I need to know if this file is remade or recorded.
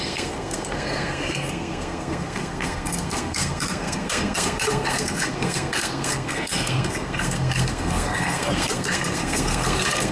remade